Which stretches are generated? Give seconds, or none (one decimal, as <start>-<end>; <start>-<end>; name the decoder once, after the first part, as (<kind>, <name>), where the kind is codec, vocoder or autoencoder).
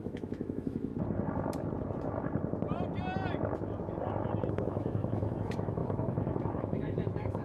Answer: 0.0-0.9 (autoencoder, DAC-VAE); 4.5-7.4